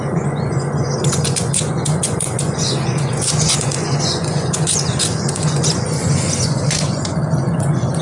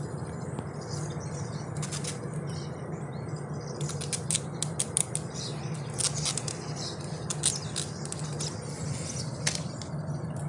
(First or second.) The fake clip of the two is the first